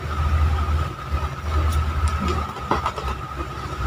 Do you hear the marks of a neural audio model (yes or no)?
no